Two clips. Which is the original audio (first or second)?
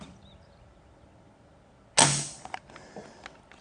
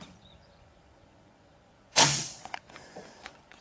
first